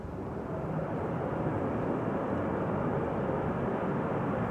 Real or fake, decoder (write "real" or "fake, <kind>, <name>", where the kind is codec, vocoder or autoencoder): real